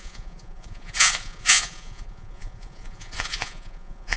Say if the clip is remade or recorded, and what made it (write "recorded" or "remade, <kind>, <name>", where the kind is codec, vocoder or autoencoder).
remade, vocoder, Vocos